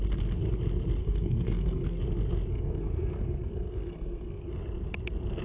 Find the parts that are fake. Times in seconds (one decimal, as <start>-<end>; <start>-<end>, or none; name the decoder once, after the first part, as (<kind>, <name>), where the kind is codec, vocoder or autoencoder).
1.0-2.0 (codec, SNAC); 2.5-4.5